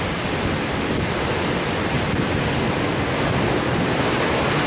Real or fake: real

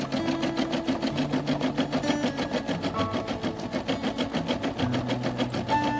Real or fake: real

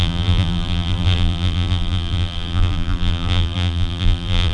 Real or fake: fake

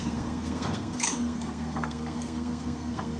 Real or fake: fake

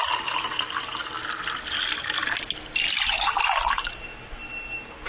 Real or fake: real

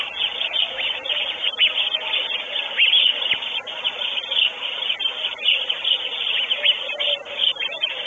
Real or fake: real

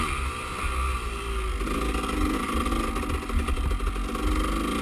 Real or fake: real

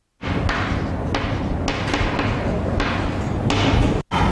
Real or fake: real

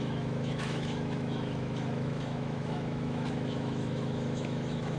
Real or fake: fake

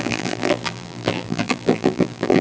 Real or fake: fake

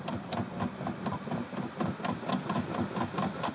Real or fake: real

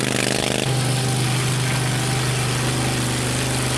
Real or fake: real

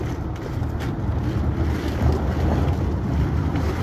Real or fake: real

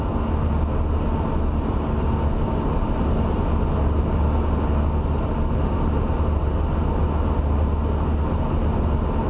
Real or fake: real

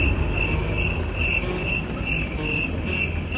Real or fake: real